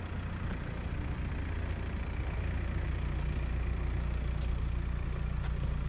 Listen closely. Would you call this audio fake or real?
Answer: real